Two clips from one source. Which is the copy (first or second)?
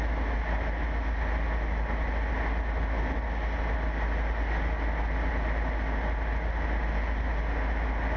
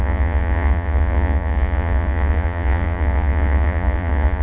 second